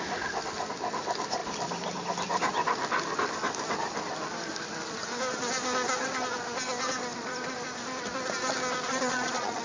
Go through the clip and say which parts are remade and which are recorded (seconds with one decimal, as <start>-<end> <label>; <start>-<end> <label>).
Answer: 0.0-8.9 recorded; 8.9-9.6 remade